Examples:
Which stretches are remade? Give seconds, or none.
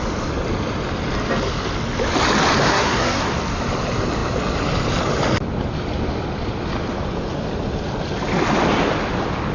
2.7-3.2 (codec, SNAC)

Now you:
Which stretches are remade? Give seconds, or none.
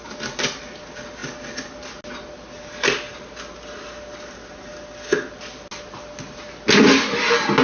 none